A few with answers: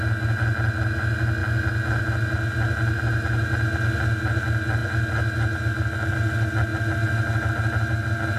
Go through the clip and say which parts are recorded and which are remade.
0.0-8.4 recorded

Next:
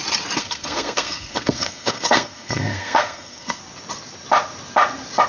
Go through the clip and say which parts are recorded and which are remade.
0.0-0.4 recorded; 0.4-3.6 remade; 3.6-5.3 recorded

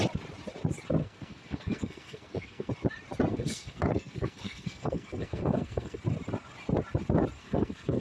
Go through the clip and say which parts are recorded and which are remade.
0.0-1.0 recorded; 1.0-2.7 remade; 2.7-3.3 recorded; 3.3-6.0 remade; 6.0-7.4 recorded; 7.4-8.0 remade

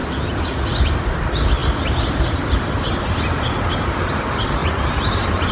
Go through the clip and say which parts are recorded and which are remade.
0.0-5.5 remade